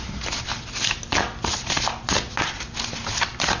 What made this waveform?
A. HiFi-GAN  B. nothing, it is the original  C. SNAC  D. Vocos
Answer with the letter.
B